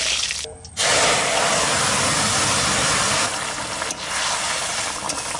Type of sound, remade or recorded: recorded